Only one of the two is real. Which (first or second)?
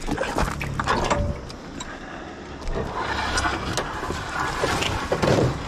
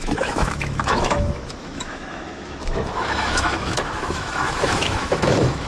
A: first